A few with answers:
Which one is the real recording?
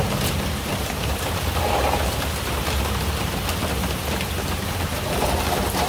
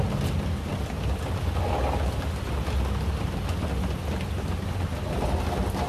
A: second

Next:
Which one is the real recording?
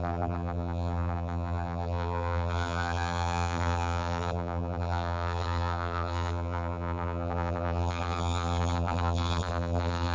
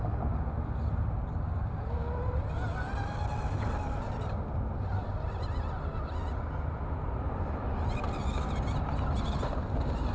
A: second